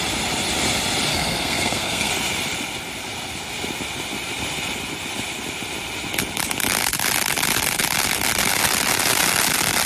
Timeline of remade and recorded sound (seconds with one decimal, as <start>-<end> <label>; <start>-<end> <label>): 0.0-1.1 recorded; 1.1-2.1 remade; 2.1-9.9 recorded